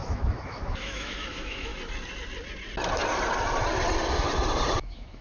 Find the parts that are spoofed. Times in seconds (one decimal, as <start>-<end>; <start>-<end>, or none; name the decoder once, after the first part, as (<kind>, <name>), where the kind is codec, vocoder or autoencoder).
0.0-1.7 (autoencoder, DAC-VAE); 4.8-5.2